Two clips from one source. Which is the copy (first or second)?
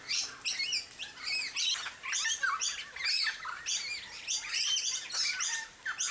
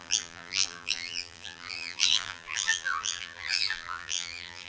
second